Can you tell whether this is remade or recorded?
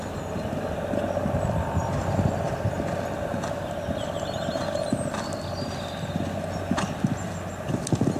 recorded